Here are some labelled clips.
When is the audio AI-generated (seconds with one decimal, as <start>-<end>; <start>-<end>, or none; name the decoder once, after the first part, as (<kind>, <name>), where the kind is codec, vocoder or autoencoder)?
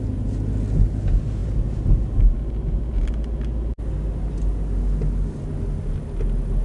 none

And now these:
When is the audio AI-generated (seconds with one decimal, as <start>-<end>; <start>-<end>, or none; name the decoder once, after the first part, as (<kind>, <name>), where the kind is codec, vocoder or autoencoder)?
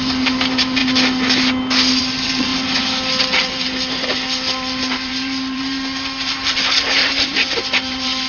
0.0-0.8 (vocoder, BigVGAN v2); 2.0-2.5; 3.2-8.3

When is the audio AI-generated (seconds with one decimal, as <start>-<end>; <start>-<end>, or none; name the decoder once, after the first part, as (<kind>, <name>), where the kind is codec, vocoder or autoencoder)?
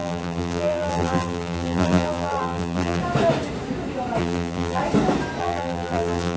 0.0-3.0 (vocoder, BigVGAN v2); 4.2-4.8; 5.4-6.4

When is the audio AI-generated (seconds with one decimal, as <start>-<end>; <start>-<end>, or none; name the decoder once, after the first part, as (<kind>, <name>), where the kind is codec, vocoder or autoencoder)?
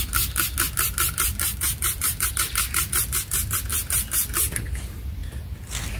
1.3-2.3 (vocoder, BigVGAN v2)